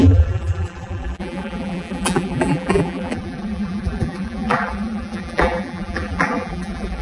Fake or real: fake